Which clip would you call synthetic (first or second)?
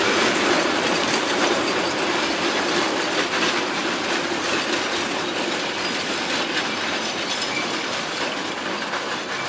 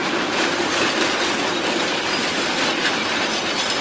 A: second